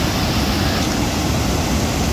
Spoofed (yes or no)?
no